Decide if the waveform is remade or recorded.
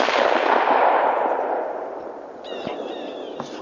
recorded